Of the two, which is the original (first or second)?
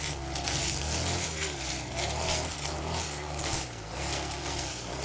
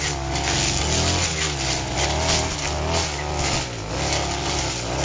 second